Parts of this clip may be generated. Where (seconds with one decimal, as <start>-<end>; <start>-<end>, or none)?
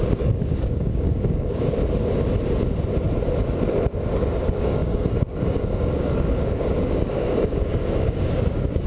0.0-1.7; 4.1-8.9